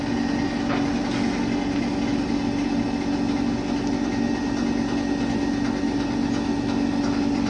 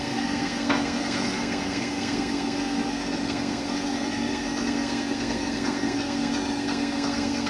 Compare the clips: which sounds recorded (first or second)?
first